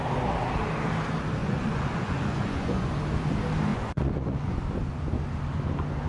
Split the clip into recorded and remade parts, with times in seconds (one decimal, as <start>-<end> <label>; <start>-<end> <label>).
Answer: 0.0-1.4 recorded; 1.4-2.9 remade; 2.9-3.7 recorded; 3.7-4.6 remade; 4.6-6.1 recorded